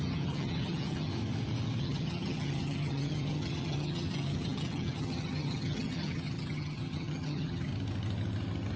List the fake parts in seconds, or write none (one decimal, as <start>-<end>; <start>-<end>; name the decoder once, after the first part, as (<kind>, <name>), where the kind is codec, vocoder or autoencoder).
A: 0.0-1.1 (vocoder, HiFi-GAN); 1.8-7.7